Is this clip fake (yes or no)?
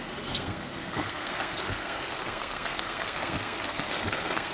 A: yes